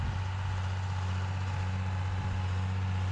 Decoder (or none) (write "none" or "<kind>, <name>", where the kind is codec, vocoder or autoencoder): none